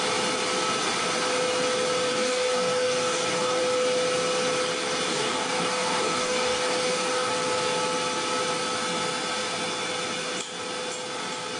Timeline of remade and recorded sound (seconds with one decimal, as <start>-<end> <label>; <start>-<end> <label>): 0.0-2.1 recorded; 2.1-3.6 remade; 3.6-5.1 recorded; 5.1-7.3 remade; 7.3-11.6 recorded